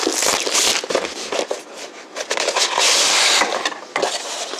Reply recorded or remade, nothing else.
remade